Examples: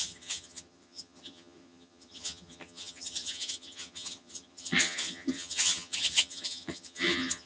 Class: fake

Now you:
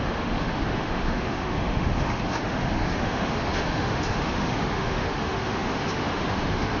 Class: fake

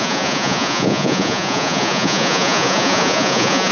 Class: fake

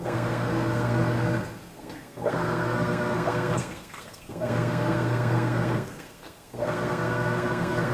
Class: fake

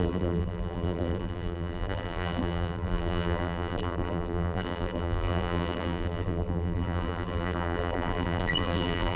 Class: fake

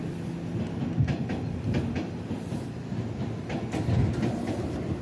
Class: real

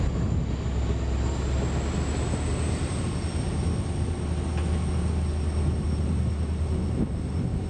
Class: real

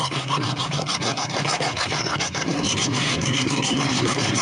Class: fake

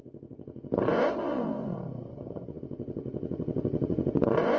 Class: fake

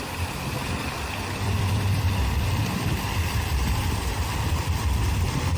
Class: fake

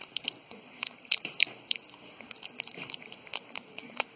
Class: fake